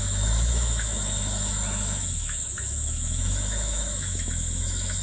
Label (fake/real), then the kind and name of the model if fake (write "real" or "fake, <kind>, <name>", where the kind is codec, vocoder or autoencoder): fake, autoencoder, DAC-VAE